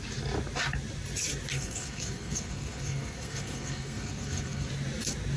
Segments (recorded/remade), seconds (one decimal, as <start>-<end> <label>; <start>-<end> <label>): 0.0-1.5 recorded; 1.5-4.7 remade; 4.7-5.4 recorded

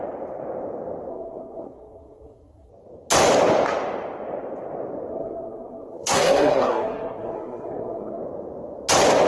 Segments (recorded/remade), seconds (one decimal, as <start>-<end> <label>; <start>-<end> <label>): 0.0-1.1 recorded; 1.1-2.7 remade; 2.7-5.1 recorded; 5.1-8.2 remade; 8.2-9.3 recorded

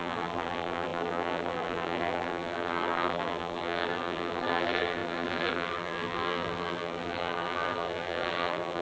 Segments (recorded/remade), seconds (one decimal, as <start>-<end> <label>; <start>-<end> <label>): 0.0-8.8 remade

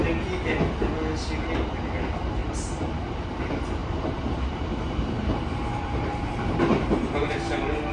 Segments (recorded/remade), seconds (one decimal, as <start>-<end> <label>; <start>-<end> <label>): 0.0-2.4 recorded; 2.4-2.9 remade; 2.9-3.8 recorded; 3.8-7.1 remade; 7.1-7.9 recorded

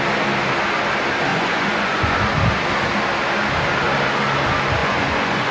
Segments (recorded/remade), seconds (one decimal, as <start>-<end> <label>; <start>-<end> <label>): 0.0-1.3 recorded; 1.3-2.2 remade; 2.2-4.8 recorded; 4.8-5.5 remade

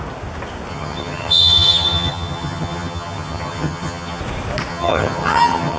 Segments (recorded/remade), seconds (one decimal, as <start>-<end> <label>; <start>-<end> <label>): 0.0-0.7 recorded; 0.7-4.2 remade; 4.2-4.7 recorded; 4.7-5.8 remade